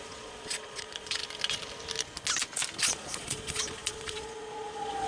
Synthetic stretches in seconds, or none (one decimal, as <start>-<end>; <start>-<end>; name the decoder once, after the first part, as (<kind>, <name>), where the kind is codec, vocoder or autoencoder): 0.0-1.2 (vocoder, Vocos); 2.8-5.1